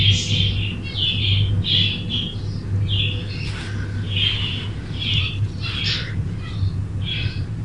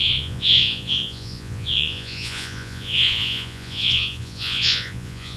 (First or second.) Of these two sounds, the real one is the first